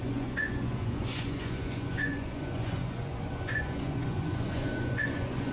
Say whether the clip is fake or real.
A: fake